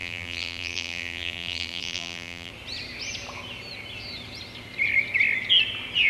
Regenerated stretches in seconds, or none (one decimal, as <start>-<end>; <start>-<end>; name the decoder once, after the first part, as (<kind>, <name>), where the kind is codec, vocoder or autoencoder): 0.0-2.5 (vocoder, BigVGAN v2)